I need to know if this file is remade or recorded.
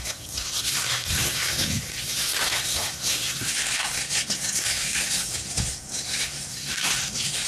remade